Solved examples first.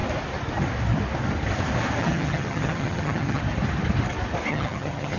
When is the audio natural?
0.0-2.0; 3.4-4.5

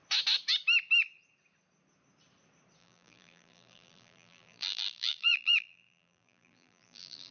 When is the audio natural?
0.0-2.8